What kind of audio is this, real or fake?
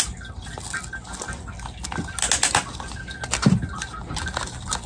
real